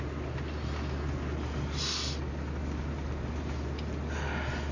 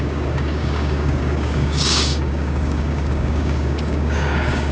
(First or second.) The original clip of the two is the first